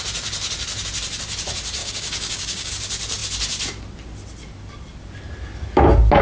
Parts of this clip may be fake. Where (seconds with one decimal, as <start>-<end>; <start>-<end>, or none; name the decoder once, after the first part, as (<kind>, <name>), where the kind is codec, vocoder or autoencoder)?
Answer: 1.8-2.7 (codec, DAC)